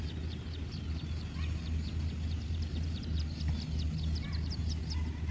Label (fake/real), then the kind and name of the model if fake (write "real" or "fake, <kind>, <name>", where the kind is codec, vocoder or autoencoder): real